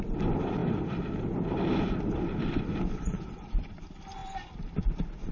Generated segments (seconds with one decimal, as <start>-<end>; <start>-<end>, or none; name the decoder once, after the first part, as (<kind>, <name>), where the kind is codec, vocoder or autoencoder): 4.2-5.3 (vocoder, BigVGAN v2)

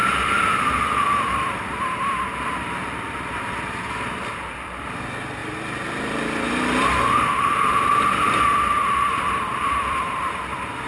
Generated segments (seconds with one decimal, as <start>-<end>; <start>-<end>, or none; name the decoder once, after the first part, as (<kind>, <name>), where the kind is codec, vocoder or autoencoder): 0.0-10.9 (vocoder, BigVGAN v2)

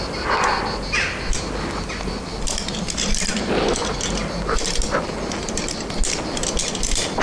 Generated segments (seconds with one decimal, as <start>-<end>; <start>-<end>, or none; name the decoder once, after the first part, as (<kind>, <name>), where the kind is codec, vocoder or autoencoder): none

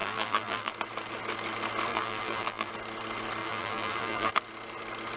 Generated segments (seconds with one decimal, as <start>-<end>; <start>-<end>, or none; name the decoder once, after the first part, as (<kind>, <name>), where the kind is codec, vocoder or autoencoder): 0.0-0.7 (vocoder, BigVGAN v2); 1.9-2.7; 3.4-4.3